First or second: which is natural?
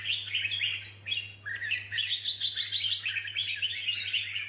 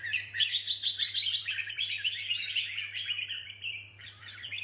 first